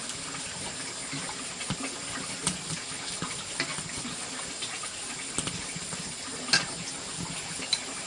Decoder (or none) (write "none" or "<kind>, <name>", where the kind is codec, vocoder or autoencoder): none